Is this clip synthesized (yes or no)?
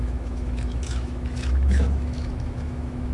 yes